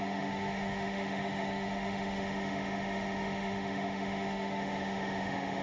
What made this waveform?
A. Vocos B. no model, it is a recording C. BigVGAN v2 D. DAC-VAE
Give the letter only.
D